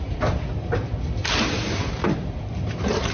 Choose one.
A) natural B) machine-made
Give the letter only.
B